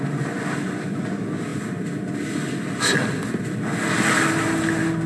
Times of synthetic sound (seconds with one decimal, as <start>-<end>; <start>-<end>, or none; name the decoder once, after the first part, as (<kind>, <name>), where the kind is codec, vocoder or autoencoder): none